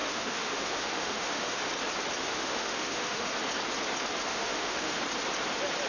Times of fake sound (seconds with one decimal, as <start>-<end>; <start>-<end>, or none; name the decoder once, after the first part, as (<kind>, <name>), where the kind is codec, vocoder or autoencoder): 0.0-1.7 (autoencoder, DAC-VAE); 2.2-3.3; 4.3-5.0